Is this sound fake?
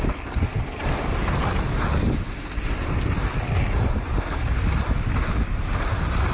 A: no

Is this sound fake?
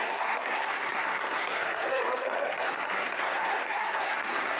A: yes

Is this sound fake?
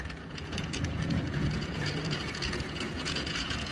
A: yes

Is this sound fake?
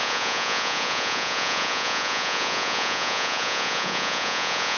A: yes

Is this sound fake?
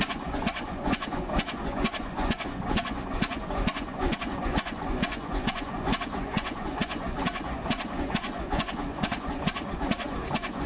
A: yes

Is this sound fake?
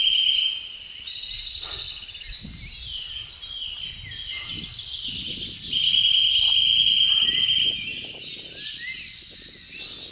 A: no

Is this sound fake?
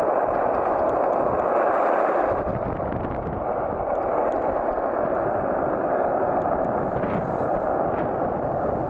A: no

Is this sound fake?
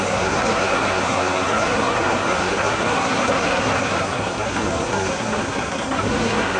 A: yes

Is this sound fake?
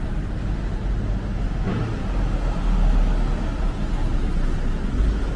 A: no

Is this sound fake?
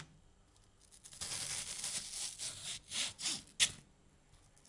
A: no